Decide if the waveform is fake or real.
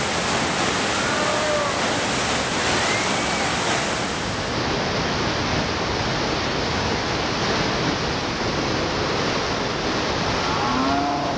real